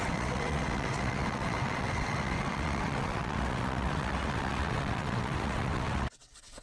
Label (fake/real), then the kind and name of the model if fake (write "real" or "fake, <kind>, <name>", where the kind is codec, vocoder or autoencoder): fake, vocoder, WaveNeXt